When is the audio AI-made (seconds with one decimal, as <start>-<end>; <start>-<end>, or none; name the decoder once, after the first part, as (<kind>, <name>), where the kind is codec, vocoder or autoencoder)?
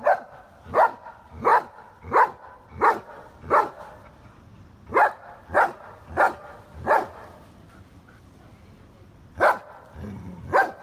none